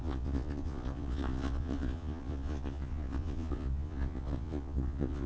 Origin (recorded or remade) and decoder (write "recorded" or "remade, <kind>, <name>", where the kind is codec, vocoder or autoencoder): remade, vocoder, Vocos